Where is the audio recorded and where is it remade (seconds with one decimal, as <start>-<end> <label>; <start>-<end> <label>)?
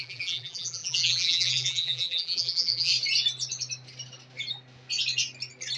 0.0-2.9 remade; 2.9-5.8 recorded